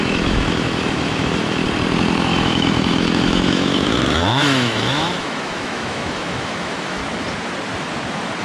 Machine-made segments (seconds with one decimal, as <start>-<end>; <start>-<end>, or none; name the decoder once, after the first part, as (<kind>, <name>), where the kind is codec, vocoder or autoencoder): 0.0-1.6 (autoencoder, DAC-VAE); 2.2-7.0